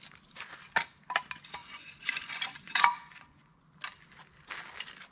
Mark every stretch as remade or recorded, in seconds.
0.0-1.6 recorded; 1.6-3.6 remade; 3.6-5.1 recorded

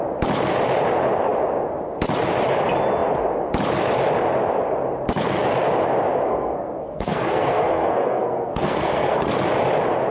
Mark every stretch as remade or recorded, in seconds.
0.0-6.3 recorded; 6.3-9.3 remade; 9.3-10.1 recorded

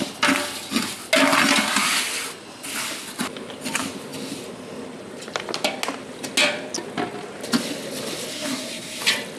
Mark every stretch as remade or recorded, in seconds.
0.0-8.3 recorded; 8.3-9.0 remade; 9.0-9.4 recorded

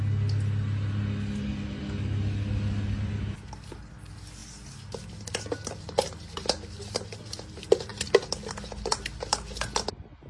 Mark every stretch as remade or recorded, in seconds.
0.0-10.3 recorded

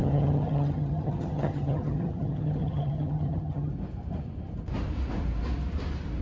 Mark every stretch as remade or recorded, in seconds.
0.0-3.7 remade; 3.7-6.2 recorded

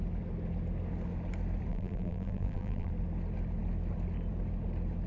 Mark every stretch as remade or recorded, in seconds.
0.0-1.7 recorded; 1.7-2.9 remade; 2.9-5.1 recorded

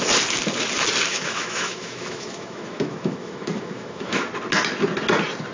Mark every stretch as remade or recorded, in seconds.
0.0-1.1 recorded; 1.1-4.3 remade; 4.3-5.5 recorded

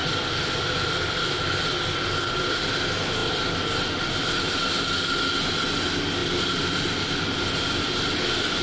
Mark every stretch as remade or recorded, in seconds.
0.0-2.7 remade; 2.7-6.2 recorded; 6.2-8.2 remade; 8.2-8.6 recorded